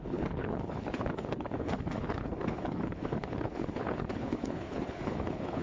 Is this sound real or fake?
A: fake